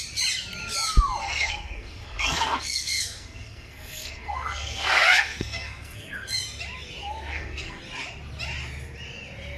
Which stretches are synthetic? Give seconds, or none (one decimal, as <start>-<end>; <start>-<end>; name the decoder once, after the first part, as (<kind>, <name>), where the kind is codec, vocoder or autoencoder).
1.2-6.4 (codec, SNAC); 7.0-7.8